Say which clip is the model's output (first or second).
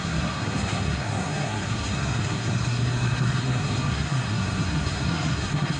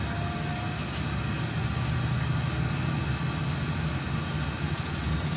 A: first